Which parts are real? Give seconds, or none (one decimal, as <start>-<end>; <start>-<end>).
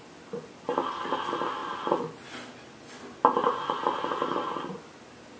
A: 0.0-5.4